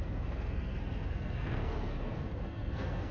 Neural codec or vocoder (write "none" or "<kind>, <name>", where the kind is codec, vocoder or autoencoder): codec, SNAC